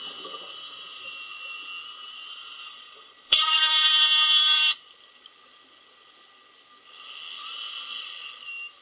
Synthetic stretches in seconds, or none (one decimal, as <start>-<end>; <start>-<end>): 2.3-3.6